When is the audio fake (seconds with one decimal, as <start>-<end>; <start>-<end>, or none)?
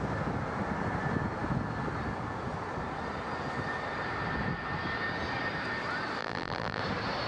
6.2-6.8